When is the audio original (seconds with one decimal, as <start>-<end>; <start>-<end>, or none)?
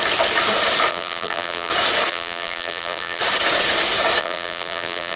0.0-0.9; 1.7-2.1; 3.2-4.2